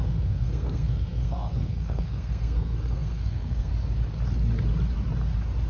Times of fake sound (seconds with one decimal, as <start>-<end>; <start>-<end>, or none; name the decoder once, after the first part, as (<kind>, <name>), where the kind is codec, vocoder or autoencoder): 0.0-3.7 (codec, SNAC)